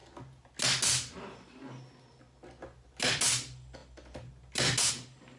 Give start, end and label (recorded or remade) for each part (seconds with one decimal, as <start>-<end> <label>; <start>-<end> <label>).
0.0-5.4 recorded